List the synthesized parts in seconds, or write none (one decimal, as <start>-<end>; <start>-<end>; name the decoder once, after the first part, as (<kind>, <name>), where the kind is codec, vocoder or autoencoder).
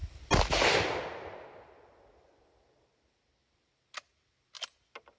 none